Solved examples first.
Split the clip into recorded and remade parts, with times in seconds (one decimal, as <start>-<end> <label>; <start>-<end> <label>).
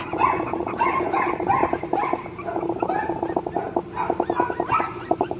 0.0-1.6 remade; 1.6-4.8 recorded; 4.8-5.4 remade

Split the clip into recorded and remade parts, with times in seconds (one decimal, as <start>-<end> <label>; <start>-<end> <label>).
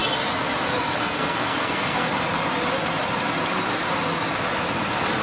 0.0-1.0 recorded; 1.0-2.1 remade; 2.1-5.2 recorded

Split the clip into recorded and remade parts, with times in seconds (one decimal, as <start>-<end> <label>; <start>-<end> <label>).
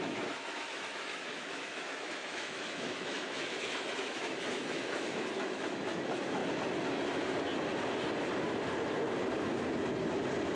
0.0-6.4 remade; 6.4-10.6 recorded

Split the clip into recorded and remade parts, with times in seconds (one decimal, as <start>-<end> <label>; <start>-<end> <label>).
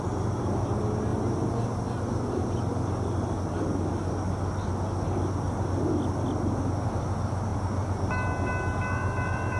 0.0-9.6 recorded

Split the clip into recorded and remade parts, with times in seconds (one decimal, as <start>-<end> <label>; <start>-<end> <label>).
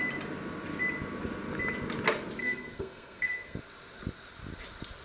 0.0-2.4 recorded; 2.4-3.6 remade; 3.6-5.0 recorded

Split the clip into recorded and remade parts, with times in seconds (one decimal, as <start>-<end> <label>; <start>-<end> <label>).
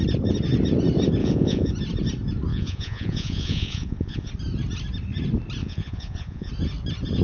0.0-1.2 recorded; 1.2-1.7 remade; 1.7-2.5 recorded; 2.5-4.3 remade; 4.3-5.6 recorded; 5.6-6.5 remade; 6.5-7.2 recorded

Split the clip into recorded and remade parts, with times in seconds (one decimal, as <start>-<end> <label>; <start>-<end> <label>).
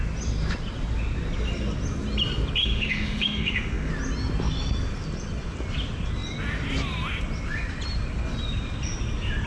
0.0-2.6 recorded; 2.6-3.9 remade; 3.9-9.5 recorded